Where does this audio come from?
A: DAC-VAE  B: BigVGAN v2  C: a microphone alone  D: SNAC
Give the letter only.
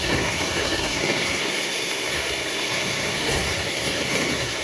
D